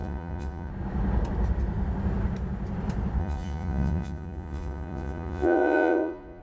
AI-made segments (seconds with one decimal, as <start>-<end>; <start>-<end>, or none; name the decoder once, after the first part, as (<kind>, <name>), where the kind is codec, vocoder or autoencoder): 0.0-0.7 (vocoder, Vocos); 3.2-6.4